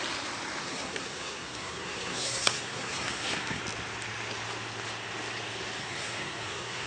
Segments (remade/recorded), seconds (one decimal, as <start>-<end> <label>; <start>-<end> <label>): 0.0-0.6 recorded; 0.6-3.6 remade; 3.6-5.8 recorded; 5.8-6.9 remade